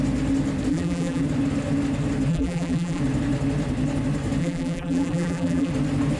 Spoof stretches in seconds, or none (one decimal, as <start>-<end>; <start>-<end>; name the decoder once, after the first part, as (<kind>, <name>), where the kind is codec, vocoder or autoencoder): 0.7-1.2 (vocoder, BigVGAN v2); 2.3-3.0; 4.4-5.7